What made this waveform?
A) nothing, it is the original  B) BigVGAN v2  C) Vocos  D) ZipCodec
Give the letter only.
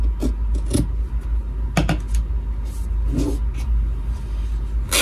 A